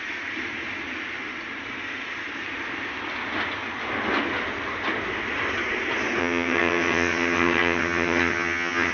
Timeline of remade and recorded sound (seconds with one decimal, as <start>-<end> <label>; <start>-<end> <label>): 0.0-6.2 recorded; 6.2-8.9 remade